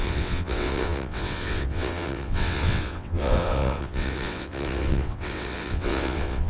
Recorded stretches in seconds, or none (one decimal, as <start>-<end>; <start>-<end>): none